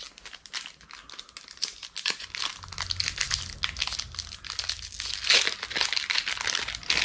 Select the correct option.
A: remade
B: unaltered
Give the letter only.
B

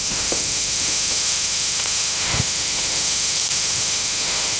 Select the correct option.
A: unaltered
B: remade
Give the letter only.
B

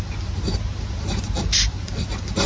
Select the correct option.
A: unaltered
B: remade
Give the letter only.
A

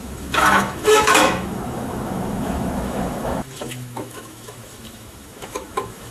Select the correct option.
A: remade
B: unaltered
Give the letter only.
A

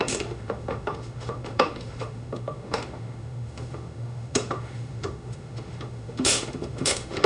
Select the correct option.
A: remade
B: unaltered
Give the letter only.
A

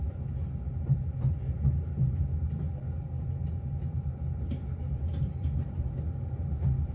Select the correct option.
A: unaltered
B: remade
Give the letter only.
A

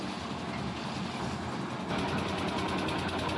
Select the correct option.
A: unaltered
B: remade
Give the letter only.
A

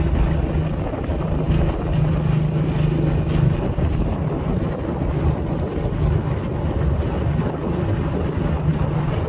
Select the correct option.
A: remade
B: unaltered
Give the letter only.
B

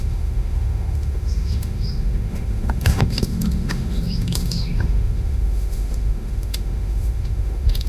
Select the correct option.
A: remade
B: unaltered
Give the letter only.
A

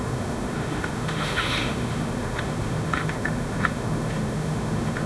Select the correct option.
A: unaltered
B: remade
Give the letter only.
B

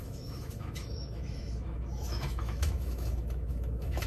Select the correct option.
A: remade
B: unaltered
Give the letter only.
A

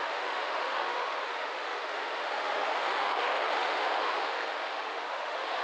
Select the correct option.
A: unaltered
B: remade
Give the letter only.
B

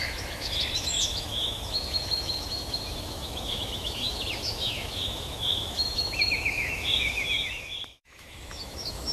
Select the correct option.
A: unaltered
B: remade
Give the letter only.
B